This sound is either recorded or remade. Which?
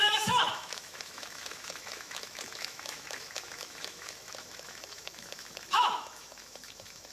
remade